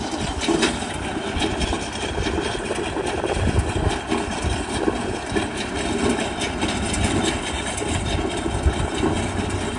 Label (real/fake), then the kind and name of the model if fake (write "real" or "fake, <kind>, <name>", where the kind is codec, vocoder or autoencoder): real